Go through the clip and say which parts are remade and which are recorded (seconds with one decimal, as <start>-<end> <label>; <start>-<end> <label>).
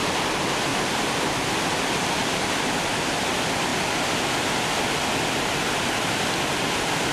0.0-0.7 recorded; 0.7-1.3 remade; 1.3-2.2 recorded; 2.2-2.9 remade; 2.9-7.1 recorded